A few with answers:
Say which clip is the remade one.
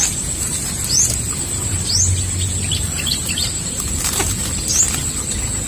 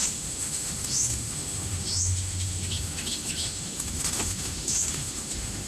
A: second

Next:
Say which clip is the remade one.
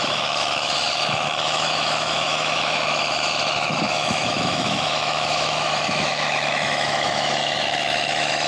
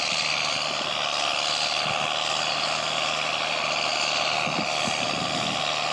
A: first